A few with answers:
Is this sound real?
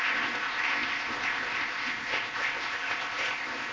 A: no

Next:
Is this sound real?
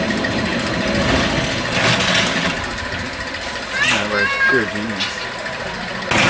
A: yes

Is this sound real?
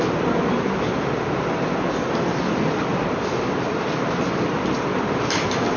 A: yes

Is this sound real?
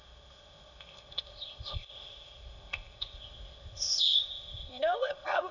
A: no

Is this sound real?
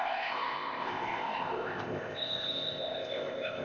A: no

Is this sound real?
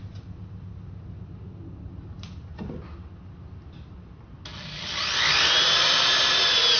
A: yes